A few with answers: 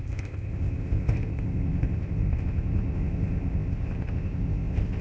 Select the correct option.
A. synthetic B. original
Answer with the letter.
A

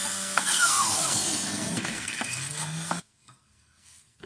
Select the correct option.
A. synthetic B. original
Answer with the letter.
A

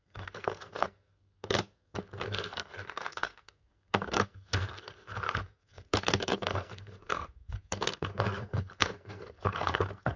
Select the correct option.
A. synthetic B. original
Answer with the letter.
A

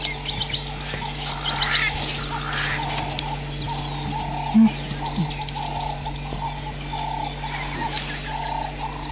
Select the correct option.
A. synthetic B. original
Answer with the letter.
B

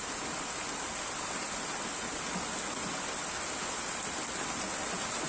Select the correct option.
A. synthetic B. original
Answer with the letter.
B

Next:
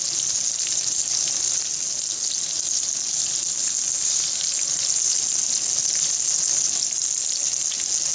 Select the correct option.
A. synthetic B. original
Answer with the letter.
B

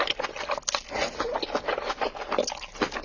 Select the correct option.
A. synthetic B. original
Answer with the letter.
B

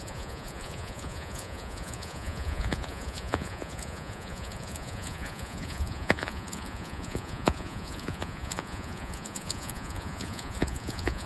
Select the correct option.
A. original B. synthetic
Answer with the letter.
B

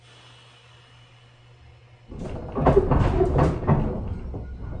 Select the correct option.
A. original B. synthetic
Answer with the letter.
A